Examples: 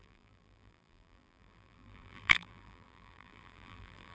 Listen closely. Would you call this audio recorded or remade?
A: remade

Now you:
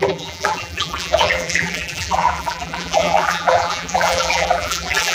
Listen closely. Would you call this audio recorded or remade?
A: remade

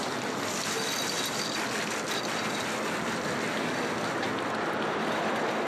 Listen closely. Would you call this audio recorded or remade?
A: recorded